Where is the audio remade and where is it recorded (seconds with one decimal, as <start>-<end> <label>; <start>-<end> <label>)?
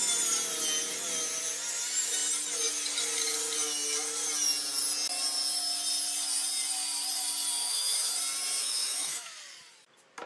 0.0-7.6 recorded; 7.6-8.1 remade; 8.1-8.6 recorded; 8.6-9.3 remade; 9.3-10.3 recorded